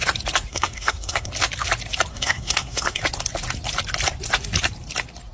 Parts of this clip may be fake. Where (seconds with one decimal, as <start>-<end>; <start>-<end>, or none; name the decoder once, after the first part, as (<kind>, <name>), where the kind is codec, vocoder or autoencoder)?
0.5-1.3 (codec, SNAC); 2.1-3.0